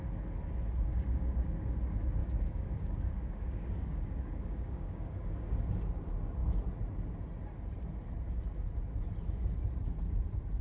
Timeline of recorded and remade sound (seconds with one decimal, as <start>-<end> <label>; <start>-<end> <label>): 0.0-0.9 recorded; 0.9-1.4 remade; 1.4-2.2 recorded; 2.2-5.7 remade; 5.7-10.6 recorded